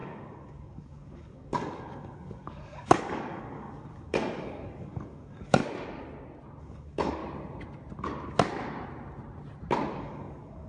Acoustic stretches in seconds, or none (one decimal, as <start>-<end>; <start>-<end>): 5.6-6.6; 7.2-10.0